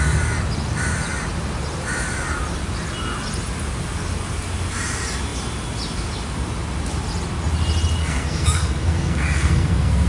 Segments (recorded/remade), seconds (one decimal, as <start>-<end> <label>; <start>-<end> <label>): 0.0-8.0 recorded; 8.0-10.1 remade